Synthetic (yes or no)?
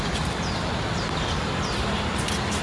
no